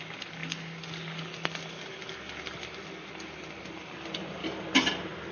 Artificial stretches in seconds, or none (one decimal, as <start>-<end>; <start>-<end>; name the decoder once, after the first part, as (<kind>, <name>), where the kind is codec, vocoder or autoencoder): none